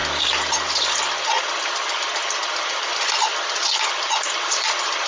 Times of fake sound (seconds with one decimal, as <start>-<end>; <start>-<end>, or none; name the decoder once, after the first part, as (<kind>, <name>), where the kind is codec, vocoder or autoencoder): none